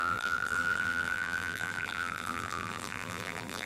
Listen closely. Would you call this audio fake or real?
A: fake